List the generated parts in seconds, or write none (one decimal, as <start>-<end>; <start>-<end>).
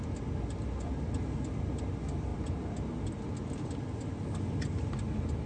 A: 2.3-3.0